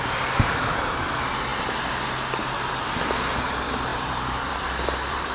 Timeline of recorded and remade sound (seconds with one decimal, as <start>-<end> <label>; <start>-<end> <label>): 0.0-3.9 recorded; 3.9-5.3 remade